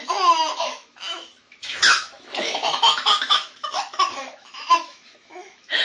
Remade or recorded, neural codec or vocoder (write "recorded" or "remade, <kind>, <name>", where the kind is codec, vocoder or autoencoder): remade, autoencoder, DAC-VAE